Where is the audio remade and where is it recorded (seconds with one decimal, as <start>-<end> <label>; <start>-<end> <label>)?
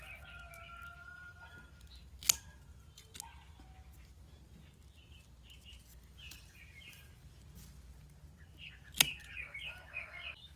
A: 0.0-1.0 recorded; 1.0-1.7 remade; 1.7-5.9 recorded; 5.9-7.3 remade; 7.3-10.6 recorded